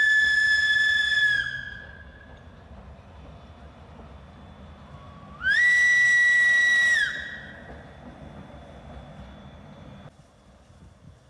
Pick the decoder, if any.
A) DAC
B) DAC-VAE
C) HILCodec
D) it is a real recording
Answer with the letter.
D